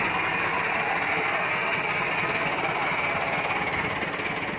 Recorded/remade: recorded